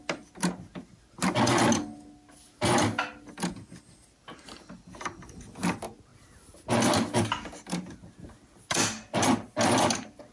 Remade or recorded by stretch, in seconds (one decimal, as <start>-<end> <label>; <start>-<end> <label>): 0.0-10.3 recorded